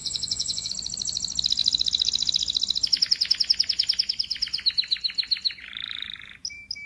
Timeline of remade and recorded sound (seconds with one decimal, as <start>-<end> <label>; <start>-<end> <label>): 0.0-0.7 remade; 0.7-6.9 recorded